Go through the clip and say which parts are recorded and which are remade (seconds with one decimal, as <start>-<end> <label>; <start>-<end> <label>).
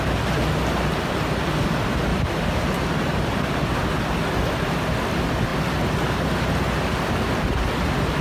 0.0-2.1 recorded; 2.1-3.9 remade; 3.9-8.2 recorded